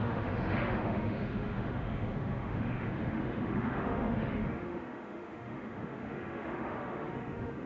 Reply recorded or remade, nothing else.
remade